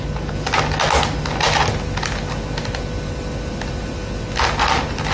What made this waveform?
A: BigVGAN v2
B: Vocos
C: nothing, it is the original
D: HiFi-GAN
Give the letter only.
C